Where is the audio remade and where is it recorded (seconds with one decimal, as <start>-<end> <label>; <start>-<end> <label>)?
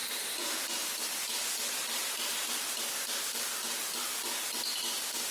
0.0-3.2 remade; 3.2-3.7 recorded; 3.7-4.5 remade; 4.5-5.3 recorded